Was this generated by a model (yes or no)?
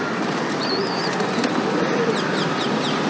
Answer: no